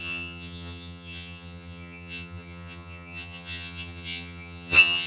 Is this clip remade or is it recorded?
remade